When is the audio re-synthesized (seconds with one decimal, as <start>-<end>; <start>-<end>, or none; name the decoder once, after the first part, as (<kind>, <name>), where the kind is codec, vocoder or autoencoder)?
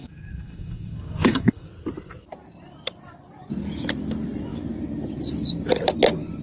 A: 0.0-1.7 (codec, DAC)